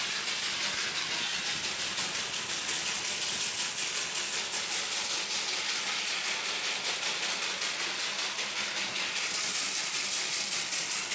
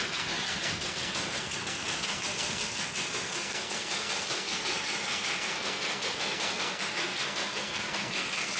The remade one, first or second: second